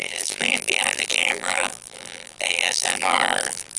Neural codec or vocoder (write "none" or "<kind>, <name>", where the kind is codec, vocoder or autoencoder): vocoder, BigVGAN v2